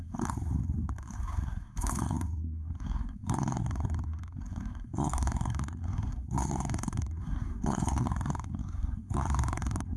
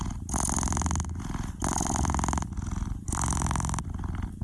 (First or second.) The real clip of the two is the second